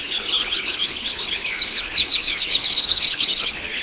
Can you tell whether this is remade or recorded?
remade